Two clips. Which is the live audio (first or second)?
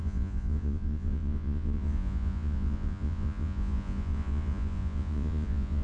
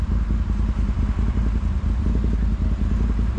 second